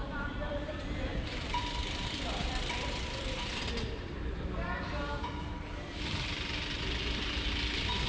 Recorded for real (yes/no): no